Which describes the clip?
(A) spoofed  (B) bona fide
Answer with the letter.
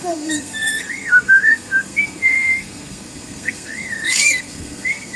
A